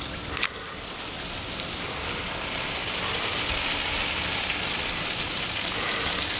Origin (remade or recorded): recorded